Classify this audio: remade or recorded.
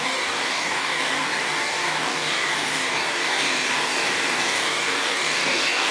remade